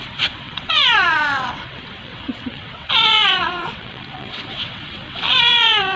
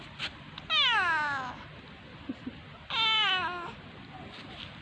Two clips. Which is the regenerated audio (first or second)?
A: first